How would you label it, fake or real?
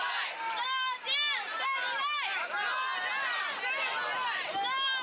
real